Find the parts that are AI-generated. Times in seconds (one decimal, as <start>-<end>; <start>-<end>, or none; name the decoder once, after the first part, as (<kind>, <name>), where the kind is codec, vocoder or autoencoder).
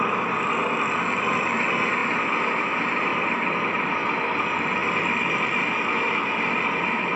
0.6-1.5 (vocoder, BigVGAN v2); 3.1-3.9